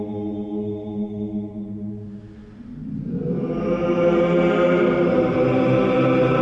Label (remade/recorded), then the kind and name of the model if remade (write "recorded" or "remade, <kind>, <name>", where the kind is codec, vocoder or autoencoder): recorded